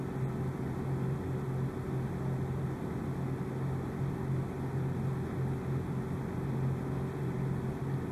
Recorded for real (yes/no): yes